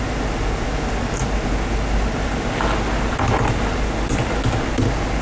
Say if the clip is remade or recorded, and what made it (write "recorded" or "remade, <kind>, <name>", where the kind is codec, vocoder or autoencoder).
recorded